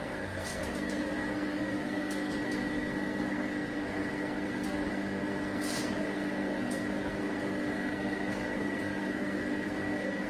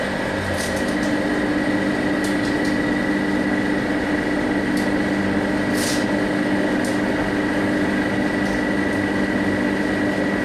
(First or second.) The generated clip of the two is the first